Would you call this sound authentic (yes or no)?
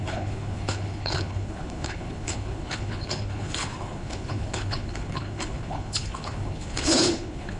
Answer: no